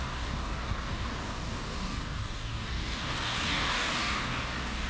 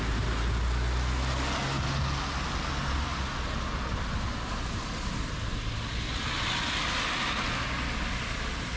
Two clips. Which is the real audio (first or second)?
second